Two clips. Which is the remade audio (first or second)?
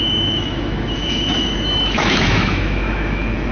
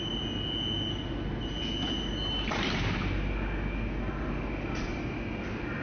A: first